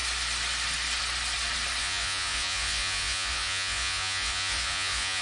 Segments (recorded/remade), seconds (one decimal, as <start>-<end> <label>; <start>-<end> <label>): 0.0-1.8 recorded; 1.8-5.2 remade